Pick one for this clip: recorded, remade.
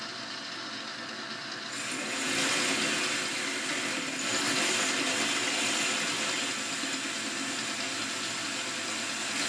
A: recorded